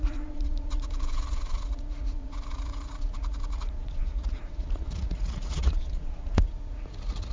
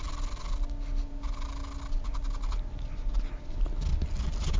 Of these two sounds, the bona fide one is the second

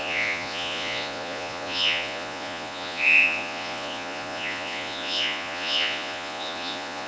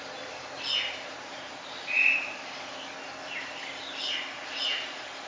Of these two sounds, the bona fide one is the second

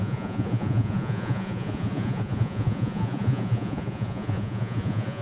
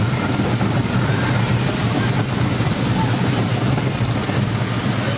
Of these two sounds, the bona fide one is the second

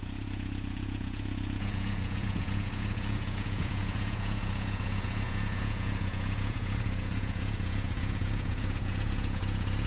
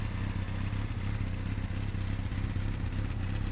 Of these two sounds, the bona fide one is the second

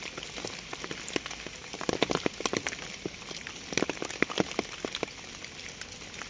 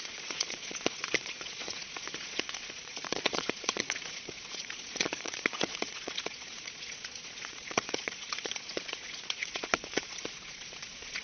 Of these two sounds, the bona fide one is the first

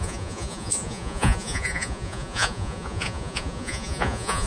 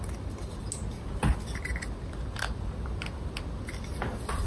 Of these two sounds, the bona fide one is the second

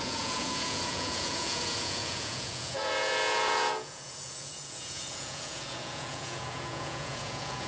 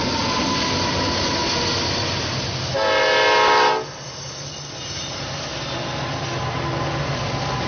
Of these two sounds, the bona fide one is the second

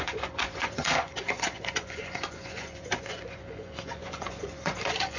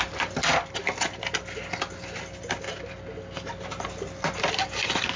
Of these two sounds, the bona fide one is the second